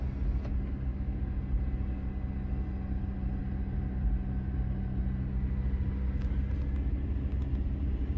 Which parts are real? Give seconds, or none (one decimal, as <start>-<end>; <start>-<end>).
0.0-0.9; 1.4-8.2